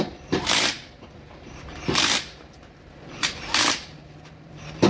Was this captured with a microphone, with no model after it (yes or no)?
no